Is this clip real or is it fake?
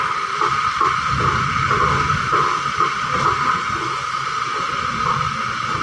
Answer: real